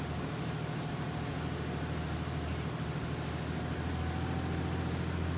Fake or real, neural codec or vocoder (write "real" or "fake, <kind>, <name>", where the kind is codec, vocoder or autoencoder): real